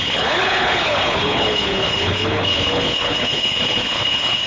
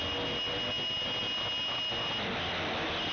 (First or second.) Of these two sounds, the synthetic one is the first